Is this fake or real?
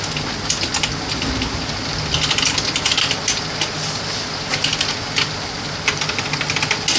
real